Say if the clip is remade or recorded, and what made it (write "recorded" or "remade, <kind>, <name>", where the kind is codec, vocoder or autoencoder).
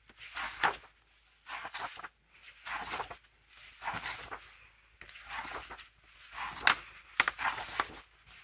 recorded